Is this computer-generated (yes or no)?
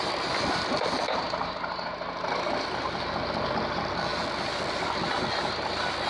no